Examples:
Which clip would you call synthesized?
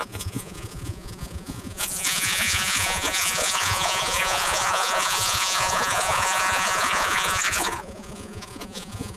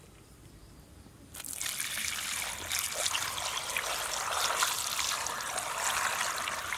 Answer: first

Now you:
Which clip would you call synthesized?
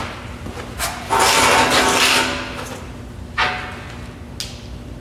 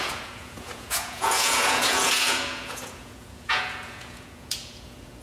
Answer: second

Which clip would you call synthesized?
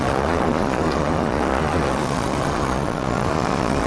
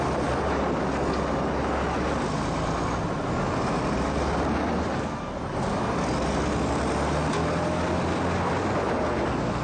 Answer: first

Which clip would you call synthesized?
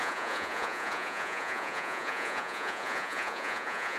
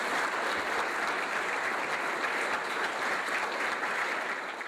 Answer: first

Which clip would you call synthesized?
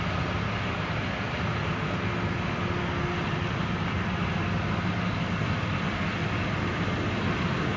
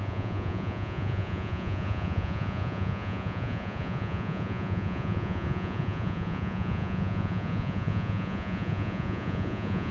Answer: second